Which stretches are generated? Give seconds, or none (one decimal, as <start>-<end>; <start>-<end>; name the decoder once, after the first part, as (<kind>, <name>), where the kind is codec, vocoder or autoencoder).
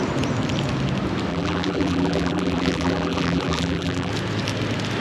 1.3-4.1 (vocoder, BigVGAN v2)